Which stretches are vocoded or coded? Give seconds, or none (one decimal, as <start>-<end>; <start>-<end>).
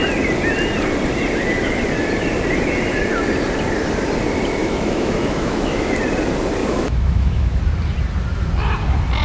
4.6-5.9; 6.6-7.6